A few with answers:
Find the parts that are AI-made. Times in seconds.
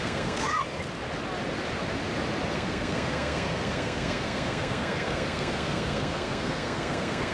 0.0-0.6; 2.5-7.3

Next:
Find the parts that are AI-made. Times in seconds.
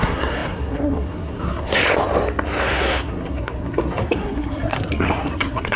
0.0-1.8; 2.6-5.8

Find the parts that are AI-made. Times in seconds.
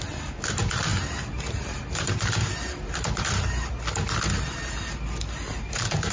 0.9-3.7; 5.5-6.1